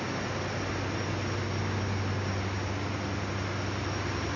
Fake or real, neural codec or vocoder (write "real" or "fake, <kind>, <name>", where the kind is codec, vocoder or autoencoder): real